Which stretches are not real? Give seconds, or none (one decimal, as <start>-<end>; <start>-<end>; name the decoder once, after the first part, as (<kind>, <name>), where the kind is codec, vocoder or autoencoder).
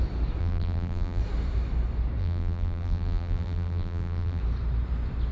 0.4-1.2 (vocoder, BigVGAN v2); 2.2-4.4